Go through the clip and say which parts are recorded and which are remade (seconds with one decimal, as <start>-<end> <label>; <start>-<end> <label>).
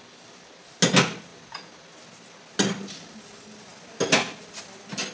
0.0-5.1 recorded